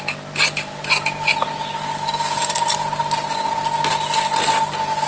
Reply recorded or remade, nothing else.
recorded